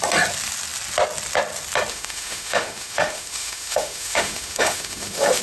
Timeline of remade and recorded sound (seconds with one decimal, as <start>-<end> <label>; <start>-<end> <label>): 0.0-1.9 recorded; 1.9-5.4 remade